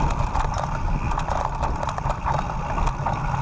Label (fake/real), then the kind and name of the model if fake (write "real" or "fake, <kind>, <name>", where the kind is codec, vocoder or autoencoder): real